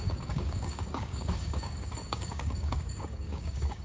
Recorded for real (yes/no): no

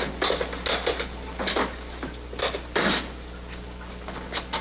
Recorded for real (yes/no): yes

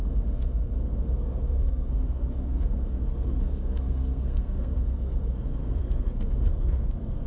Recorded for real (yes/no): no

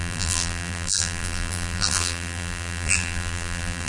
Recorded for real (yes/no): no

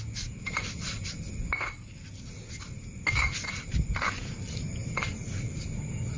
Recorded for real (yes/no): yes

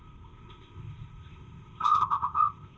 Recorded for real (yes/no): no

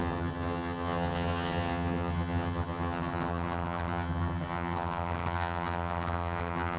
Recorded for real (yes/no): no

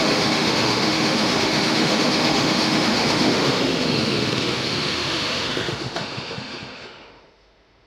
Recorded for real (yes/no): no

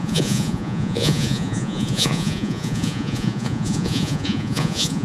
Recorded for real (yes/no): no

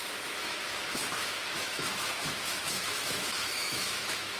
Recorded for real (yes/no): no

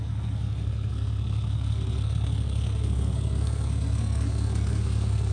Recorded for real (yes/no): no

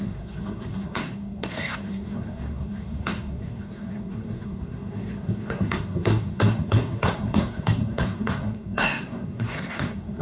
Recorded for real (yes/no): no